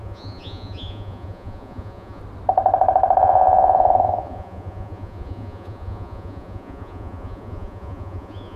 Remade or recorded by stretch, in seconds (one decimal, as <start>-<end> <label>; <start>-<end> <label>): 0.0-2.2 remade; 2.2-3.2 recorded; 3.2-8.6 remade